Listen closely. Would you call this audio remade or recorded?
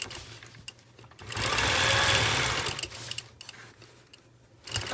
recorded